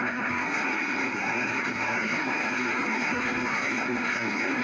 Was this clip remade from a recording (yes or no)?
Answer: yes